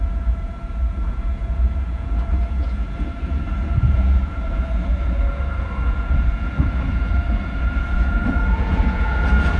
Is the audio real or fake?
fake